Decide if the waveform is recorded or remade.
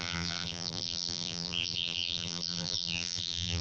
remade